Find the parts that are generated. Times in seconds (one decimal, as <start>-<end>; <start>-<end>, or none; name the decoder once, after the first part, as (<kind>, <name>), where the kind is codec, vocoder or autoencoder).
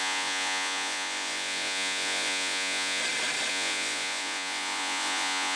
0.0-3.0 (vocoder, Vocos); 3.5-5.6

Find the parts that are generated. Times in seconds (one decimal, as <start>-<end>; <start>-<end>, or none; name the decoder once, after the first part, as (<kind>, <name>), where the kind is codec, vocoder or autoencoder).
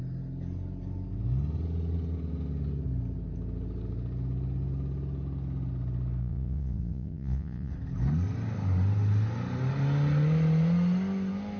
6.2-7.7 (vocoder, Vocos)